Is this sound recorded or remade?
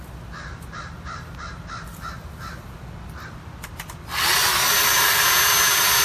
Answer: recorded